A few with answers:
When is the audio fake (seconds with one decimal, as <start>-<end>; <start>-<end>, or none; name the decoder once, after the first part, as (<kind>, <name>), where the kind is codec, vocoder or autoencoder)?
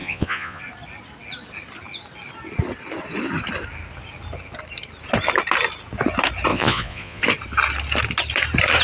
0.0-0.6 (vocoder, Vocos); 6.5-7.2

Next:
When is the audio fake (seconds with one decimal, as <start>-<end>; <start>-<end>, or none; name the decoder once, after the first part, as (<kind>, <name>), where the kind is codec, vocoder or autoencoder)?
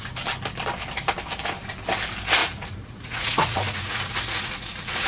2.4-5.1 (vocoder, Vocos)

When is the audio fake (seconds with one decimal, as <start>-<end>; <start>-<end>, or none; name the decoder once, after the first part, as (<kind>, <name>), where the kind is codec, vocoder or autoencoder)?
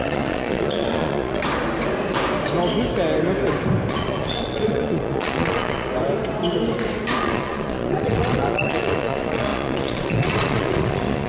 0.0-1.4 (vocoder, Vocos); 3.9-5.9; 7.2-11.3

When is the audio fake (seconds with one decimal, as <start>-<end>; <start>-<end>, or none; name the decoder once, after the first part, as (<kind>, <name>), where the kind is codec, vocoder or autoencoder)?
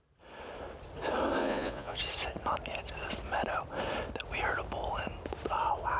1.4-2.0 (vocoder, Vocos)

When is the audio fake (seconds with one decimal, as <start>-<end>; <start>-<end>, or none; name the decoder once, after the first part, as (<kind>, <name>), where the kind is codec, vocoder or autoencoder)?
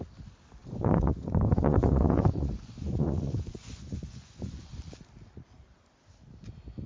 0.6-4.7 (vocoder, Vocos)